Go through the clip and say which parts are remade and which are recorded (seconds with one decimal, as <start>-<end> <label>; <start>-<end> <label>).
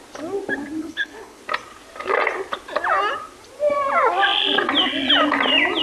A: 0.0-0.8 recorded; 0.8-1.4 remade; 1.4-5.8 recorded